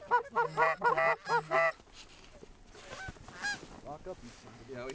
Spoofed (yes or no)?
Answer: no